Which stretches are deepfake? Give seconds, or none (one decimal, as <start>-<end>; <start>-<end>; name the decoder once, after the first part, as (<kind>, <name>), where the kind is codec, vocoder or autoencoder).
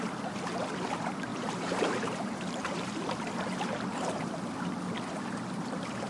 1.3-4.3 (vocoder, BigVGAN v2)